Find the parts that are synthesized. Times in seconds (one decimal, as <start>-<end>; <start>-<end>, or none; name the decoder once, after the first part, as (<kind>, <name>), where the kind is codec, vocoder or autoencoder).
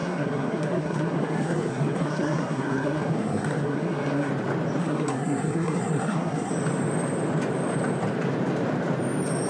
0.0-4.3 (codec, SNAC); 4.8-6.5